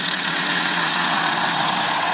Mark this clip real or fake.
fake